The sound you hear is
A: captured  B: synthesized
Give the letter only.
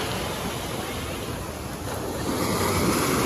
A